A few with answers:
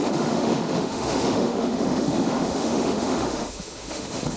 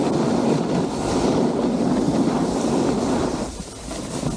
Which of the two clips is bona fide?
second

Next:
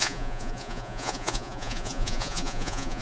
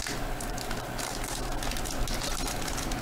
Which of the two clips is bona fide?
second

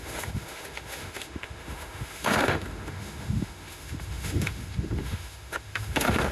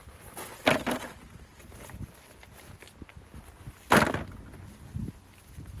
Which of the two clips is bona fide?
second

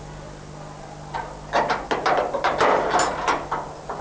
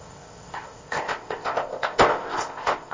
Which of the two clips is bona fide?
first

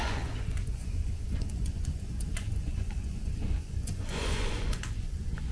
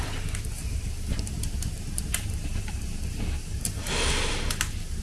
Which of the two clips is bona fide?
second